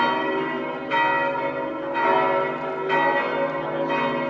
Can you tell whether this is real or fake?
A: real